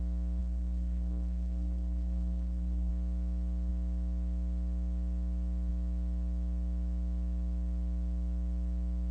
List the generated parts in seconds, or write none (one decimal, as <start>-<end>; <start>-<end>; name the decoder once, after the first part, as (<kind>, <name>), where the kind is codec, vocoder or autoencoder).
0.4-2.9 (codec, SNAC)